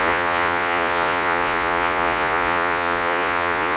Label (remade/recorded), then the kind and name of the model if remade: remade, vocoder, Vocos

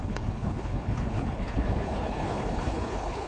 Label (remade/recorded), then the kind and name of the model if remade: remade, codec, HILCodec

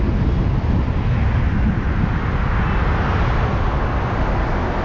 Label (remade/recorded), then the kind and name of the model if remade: recorded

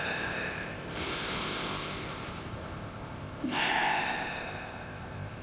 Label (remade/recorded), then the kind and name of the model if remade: remade, codec, ZipCodec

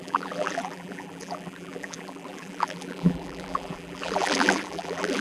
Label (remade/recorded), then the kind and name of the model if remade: remade, vocoder, BigVGAN v2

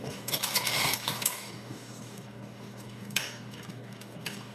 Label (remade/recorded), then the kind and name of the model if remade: remade, codec, DAC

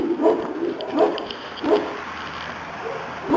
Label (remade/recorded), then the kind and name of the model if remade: recorded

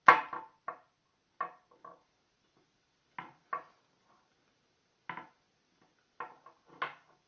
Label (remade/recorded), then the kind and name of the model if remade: recorded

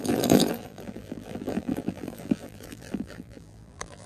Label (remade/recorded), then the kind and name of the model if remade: remade, vocoder, BigVGAN v2